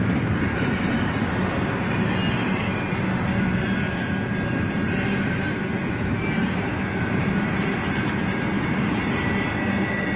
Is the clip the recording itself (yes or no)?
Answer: yes